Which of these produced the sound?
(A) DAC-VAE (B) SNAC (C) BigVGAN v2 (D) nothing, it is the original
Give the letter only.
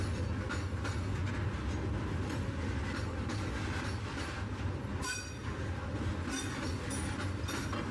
D